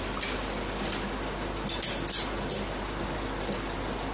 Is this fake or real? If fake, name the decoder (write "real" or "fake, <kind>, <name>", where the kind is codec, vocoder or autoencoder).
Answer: real